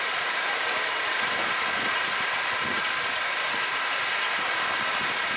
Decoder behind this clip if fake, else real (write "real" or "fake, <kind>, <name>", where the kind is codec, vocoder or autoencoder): real